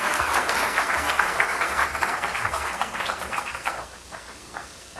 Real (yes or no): no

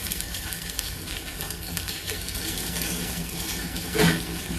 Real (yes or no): no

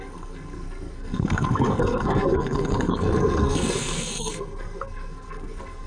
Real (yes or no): no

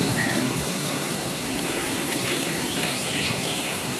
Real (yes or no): no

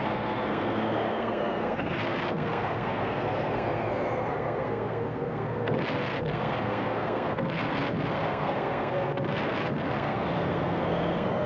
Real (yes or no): no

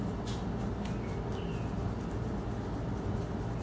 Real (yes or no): yes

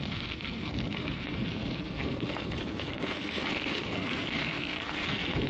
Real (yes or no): no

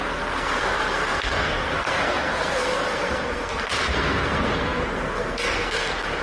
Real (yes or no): no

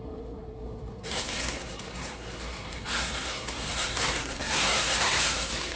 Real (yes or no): no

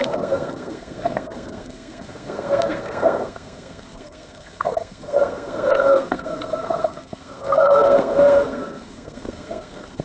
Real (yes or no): no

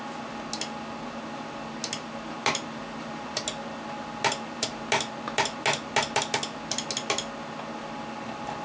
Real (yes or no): yes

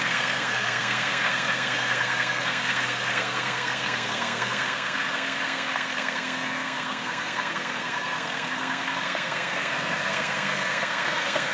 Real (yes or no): no